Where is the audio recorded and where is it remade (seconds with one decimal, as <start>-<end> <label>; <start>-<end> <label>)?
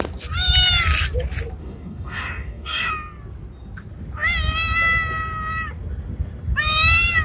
0.0-1.6 recorded; 1.6-2.9 remade; 2.9-7.2 recorded